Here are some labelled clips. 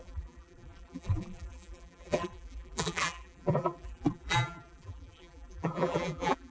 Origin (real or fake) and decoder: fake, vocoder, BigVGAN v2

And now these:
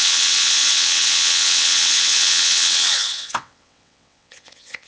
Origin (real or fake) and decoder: fake, vocoder, WaveNeXt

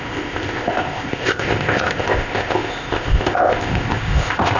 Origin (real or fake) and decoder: fake, codec, ZipCodec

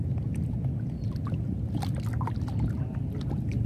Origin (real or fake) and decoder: real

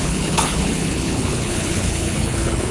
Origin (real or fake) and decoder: fake, codec, HILCodec